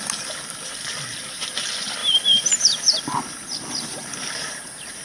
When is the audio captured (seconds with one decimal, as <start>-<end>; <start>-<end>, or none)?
0.0-2.0; 3.0-3.9; 4.6-5.0